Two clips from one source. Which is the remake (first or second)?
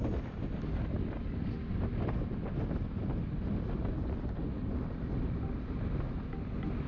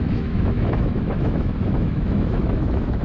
second